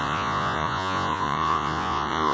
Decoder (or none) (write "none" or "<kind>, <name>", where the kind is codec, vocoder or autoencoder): vocoder, Vocos